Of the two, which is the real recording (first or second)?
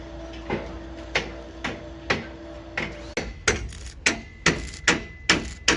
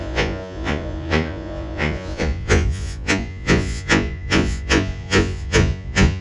first